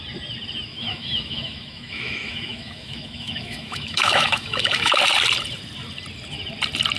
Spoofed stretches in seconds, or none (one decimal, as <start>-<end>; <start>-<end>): 0.7-4.9